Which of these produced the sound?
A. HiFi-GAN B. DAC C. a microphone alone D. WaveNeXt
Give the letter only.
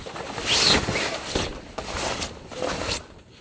C